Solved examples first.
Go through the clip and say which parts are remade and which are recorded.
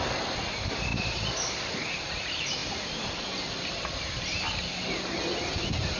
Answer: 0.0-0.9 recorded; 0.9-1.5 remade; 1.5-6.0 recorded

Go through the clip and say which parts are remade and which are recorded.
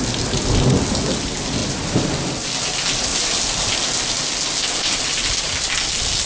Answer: 0.0-6.3 recorded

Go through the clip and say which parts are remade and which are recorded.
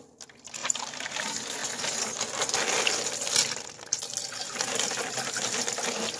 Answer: 0.0-0.6 recorded; 0.6-1.1 remade; 1.1-6.2 recorded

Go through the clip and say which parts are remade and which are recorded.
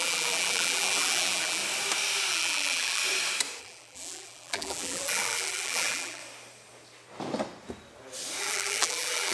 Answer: 0.0-1.6 remade; 1.6-2.3 recorded; 2.3-3.0 remade; 3.0-3.6 recorded; 3.6-6.2 remade; 6.2-8.4 recorded; 8.4-9.3 remade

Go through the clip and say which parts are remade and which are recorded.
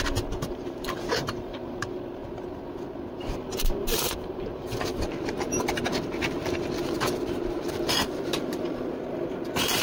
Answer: 0.0-2.2 remade; 2.2-3.2 recorded; 3.2-9.8 remade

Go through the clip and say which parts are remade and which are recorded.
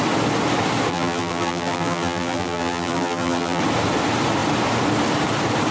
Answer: 0.0-0.9 recorded; 0.9-3.6 remade; 3.6-5.7 recorded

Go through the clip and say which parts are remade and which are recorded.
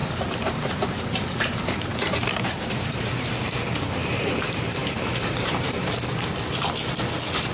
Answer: 0.0-4.2 remade; 4.2-4.8 recorded; 4.8-5.9 remade; 5.9-7.5 recorded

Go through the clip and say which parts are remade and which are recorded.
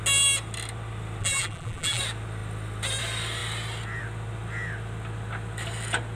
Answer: 0.0-1.2 recorded; 1.2-2.0 remade; 2.0-6.2 recorded